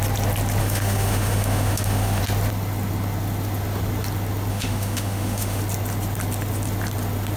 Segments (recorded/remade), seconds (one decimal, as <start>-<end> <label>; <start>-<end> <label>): 0.0-0.6 recorded; 0.6-2.2 remade; 2.2-4.5 recorded; 4.5-5.6 remade; 5.6-7.4 recorded